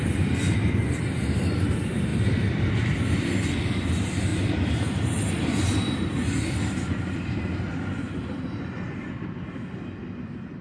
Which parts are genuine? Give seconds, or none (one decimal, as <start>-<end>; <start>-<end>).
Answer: 0.0-10.6